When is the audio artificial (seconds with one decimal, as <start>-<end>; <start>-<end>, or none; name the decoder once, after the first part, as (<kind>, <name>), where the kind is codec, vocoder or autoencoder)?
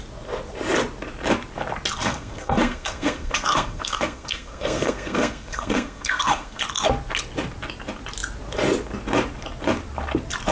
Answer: 2.0-6.6 (codec, SNAC)